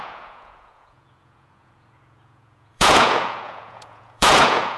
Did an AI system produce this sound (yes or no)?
yes